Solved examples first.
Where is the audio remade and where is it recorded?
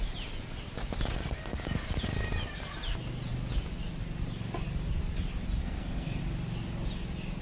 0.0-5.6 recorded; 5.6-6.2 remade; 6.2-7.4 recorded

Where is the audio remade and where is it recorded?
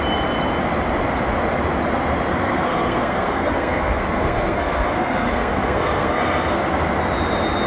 0.0-2.3 recorded; 2.3-6.8 remade; 6.8-7.7 recorded